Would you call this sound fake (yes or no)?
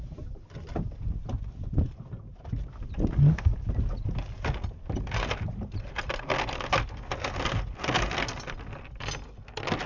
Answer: no